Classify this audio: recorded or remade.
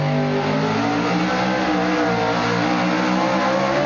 recorded